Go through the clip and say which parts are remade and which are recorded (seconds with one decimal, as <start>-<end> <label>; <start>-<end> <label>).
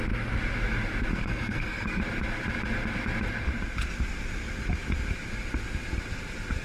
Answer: 0.0-1.1 recorded; 1.1-2.0 remade; 2.0-6.6 recorded